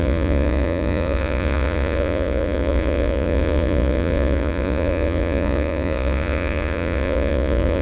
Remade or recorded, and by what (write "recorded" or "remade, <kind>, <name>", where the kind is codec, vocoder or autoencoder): remade, vocoder, Vocos